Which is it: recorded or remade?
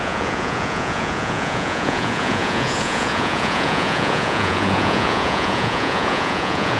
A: remade